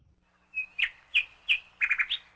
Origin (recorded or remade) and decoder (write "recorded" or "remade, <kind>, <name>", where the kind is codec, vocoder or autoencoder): recorded